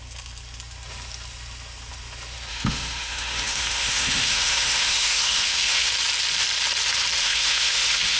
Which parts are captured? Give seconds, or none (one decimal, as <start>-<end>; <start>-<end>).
0.0-2.5; 5.9-7.2